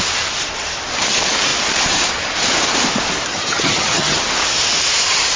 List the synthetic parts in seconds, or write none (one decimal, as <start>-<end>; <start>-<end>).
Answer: 3.3-4.2